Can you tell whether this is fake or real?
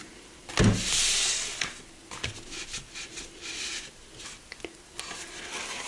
real